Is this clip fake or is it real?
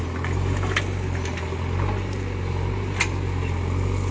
real